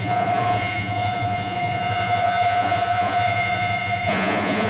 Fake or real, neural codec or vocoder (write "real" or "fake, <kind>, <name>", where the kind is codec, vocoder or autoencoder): fake, vocoder, Vocos